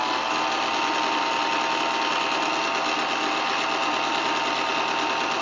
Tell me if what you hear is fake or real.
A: real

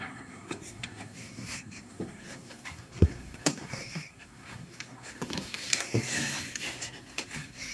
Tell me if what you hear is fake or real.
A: fake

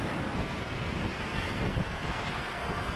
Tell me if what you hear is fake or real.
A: fake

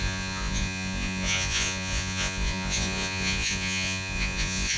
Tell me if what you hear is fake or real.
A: fake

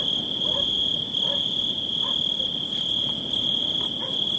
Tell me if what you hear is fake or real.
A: real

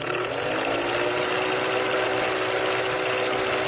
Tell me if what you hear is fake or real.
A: real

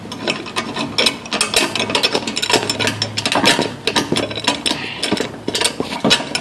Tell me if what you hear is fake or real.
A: real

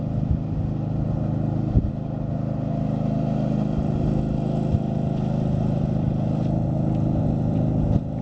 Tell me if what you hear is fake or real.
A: real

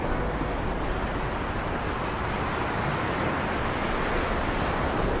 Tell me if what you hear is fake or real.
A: real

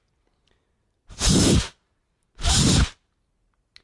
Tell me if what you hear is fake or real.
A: real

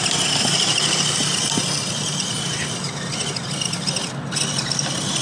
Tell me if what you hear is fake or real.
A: real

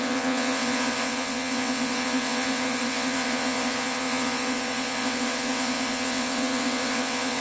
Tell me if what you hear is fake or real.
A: fake